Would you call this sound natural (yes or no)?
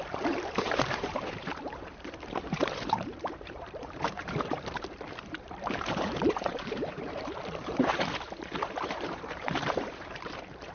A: no